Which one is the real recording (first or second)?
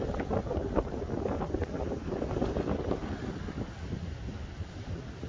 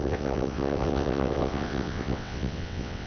first